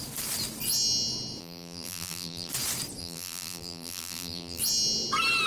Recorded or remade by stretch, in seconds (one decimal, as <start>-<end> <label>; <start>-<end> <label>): 0.0-1.4 recorded; 1.4-2.5 remade; 2.5-3.0 recorded; 3.0-4.6 remade; 4.6-5.5 recorded